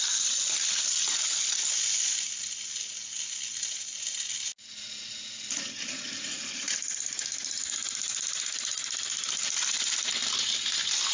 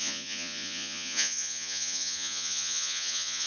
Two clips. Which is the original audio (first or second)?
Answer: first